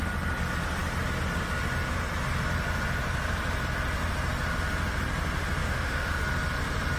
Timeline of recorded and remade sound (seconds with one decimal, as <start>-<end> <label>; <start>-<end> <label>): 0.0-5.6 recorded; 5.6-6.2 remade; 6.2-7.0 recorded